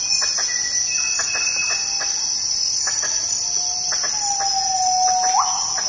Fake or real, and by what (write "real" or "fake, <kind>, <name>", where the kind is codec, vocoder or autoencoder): real